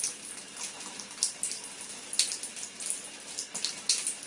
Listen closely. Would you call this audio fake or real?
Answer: real